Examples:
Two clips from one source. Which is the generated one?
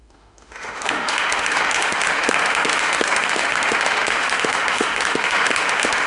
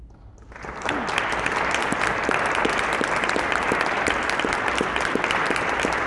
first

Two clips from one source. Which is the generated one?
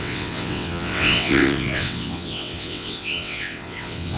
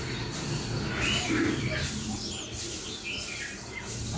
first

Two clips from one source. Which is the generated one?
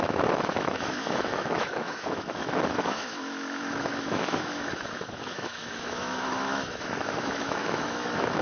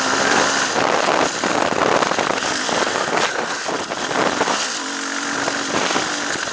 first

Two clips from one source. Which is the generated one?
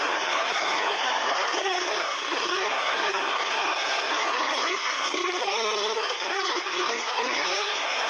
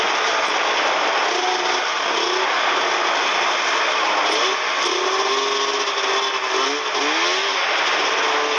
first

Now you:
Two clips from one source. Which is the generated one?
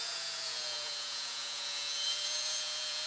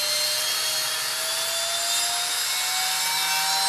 first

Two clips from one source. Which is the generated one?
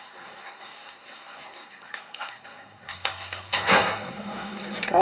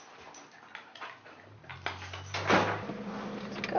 first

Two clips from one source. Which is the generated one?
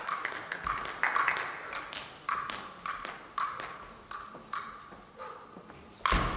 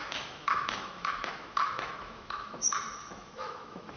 second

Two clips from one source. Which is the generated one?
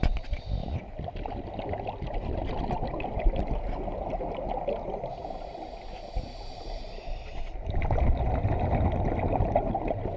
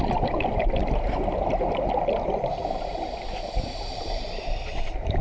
second